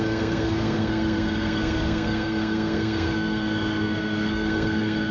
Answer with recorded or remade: remade